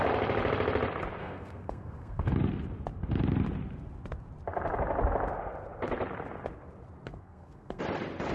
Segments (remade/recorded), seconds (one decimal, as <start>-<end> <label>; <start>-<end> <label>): 0.0-1.2 recorded; 1.2-2.3 remade; 2.3-7.1 recorded; 7.1-7.8 remade; 7.8-8.3 recorded